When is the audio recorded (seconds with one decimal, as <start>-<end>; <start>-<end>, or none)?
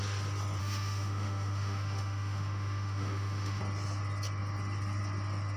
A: 0.0-0.6; 3.6-5.6